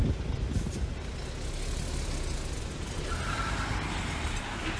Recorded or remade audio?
recorded